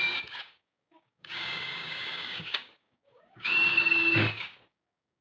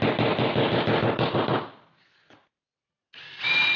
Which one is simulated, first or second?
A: first